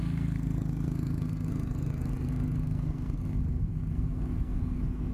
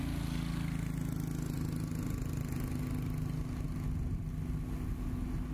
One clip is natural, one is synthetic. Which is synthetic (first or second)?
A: first